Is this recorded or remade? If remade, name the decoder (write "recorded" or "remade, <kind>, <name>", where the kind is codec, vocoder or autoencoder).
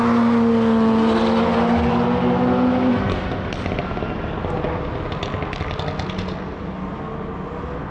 recorded